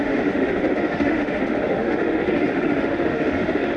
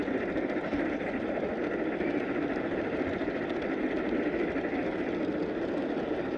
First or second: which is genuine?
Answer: second